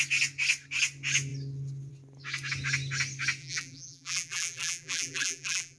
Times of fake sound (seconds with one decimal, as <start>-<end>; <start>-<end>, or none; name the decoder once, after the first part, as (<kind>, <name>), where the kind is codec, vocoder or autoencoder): 3.4-5.8 (vocoder, BigVGAN v2)